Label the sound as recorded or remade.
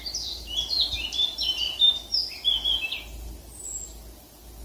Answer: recorded